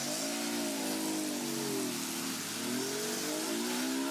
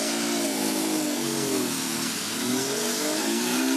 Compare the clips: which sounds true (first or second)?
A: first